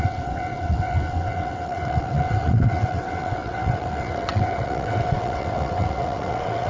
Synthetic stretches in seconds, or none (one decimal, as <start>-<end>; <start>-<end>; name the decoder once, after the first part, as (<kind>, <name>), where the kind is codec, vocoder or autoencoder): 0.0-6.7 (vocoder, WaveNeXt)